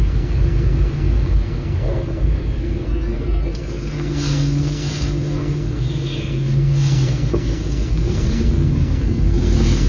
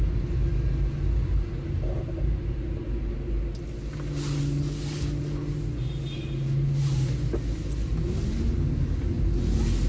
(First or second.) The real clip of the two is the second